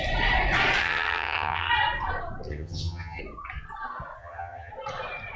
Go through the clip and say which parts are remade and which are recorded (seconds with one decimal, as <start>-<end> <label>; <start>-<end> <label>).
0.0-0.8 recorded; 0.8-1.7 remade; 1.7-2.5 recorded; 2.5-3.2 remade; 3.2-4.2 recorded; 4.2-4.7 remade; 4.7-5.4 recorded